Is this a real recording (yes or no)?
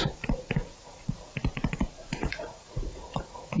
no